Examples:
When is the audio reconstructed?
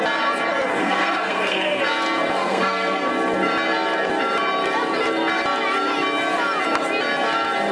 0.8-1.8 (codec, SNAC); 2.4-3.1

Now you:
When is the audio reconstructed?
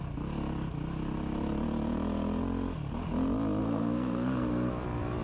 3.6-4.7 (codec, SNAC)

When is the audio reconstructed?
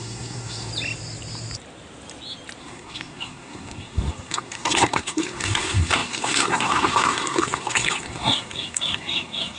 0.0-0.7 (codec, SNAC); 2.6-9.6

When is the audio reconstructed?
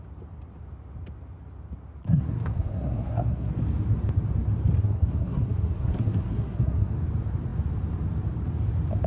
2.0-3.5 (codec, SNAC); 4.8-6.9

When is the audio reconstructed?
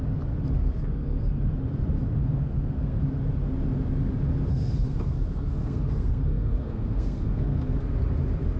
0.6-1.4 (codec, SNAC); 2.2-3.0; 4.5-8.0